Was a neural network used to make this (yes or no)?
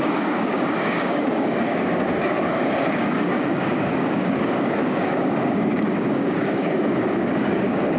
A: yes